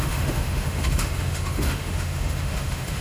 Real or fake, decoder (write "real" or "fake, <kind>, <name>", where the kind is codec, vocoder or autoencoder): fake, autoencoder, DAC-VAE